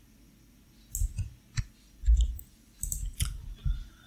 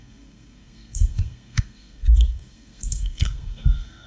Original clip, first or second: first